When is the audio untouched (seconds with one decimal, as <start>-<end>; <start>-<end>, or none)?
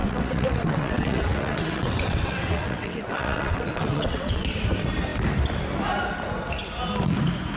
4.6-7.6